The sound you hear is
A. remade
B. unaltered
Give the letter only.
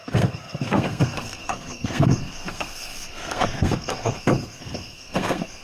A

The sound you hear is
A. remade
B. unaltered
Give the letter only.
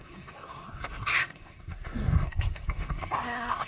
A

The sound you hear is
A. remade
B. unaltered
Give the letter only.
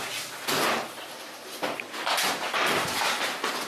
B